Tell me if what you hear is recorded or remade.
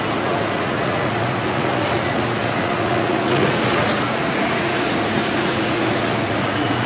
remade